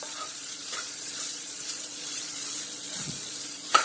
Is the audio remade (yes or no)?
yes